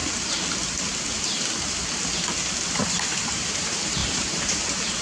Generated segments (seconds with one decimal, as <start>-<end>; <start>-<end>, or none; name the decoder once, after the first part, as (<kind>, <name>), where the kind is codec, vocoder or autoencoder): 2.9-5.0 (vocoder, BigVGAN v2)